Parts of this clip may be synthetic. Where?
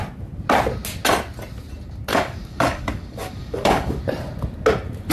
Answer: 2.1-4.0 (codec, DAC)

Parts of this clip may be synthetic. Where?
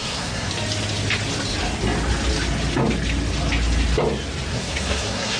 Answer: 0.0-0.5 (codec, SNAC); 4.5-5.4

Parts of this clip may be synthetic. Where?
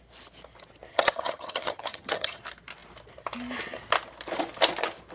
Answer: 0.9-2.4 (vocoder, HiFi-GAN)